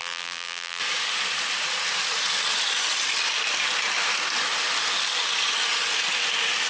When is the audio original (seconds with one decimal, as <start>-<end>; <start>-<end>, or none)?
0.8-6.7